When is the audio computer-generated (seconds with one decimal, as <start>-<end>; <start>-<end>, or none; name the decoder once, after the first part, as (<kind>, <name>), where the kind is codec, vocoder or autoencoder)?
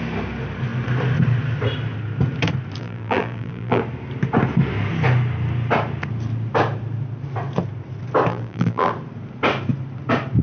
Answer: 2.8-3.8 (vocoder, BigVGAN v2); 8.3-8.9